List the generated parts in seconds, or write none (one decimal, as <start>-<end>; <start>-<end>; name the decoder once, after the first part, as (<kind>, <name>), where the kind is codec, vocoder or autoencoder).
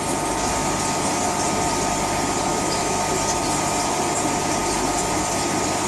2.5-3.1 (autoencoder, DAC-VAE)